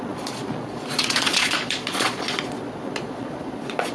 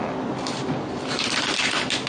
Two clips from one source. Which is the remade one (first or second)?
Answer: first